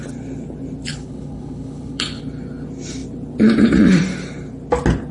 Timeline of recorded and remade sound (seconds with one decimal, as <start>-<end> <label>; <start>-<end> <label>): 0.0-0.9 recorded; 0.9-2.2 remade; 2.2-5.1 recorded